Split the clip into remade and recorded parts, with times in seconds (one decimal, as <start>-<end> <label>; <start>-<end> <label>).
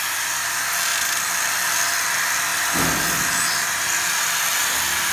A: 0.0-5.1 recorded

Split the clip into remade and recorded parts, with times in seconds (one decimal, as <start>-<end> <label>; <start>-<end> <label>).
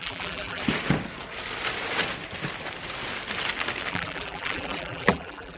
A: 0.0-0.6 remade; 0.6-3.9 recorded; 3.9-5.6 remade